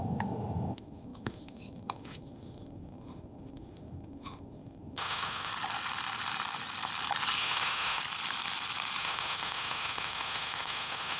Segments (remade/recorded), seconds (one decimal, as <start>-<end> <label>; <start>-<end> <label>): 0.0-5.5 remade; 5.5-7.4 recorded; 7.4-8.0 remade; 8.0-9.0 recorded; 9.0-11.2 remade